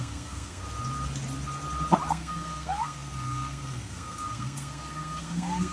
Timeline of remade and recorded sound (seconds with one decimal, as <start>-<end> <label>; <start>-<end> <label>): 0.0-0.6 remade; 0.6-2.1 recorded; 2.1-5.7 remade